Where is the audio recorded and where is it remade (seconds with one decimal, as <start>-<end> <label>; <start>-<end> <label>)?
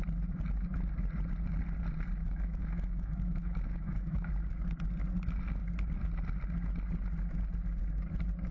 0.0-2.2 recorded; 2.2-4.3 remade; 4.3-8.5 recorded